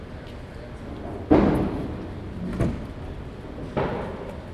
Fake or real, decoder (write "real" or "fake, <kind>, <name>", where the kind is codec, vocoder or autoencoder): real